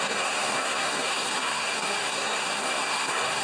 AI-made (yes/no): yes